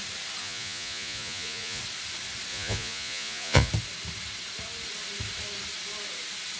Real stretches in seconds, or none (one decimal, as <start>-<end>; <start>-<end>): 0.0-0.4; 1.8-2.5; 3.7-6.6